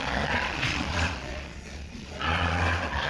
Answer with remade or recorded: remade